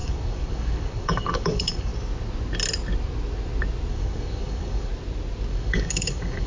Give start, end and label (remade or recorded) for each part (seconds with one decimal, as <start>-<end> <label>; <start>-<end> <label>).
0.0-1.9 remade; 1.9-3.9 recorded; 3.9-4.9 remade; 4.9-5.5 recorded; 5.5-6.5 remade